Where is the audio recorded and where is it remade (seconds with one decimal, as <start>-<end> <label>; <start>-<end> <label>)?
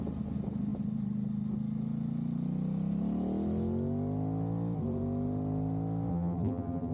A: 0.0-6.1 recorded; 6.1-6.9 remade